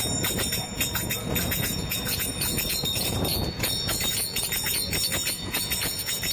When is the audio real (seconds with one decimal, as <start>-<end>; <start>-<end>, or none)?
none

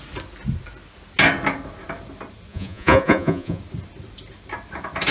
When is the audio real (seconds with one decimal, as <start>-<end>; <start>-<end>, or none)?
0.0-2.5; 3.6-5.1

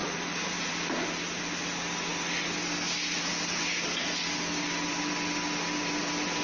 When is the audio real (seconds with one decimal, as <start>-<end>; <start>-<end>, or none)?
0.7-6.4